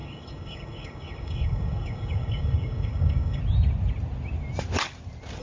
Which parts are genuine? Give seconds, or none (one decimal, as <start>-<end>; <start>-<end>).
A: 3.4-5.4